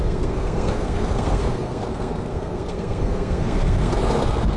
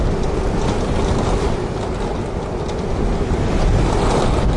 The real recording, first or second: second